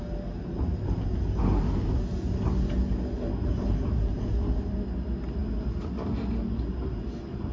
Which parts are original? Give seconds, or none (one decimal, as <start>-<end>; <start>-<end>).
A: 0.0-3.4; 4.2-7.5